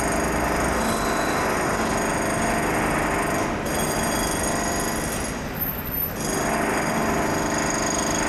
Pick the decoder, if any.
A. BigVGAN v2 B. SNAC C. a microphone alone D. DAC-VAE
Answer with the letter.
C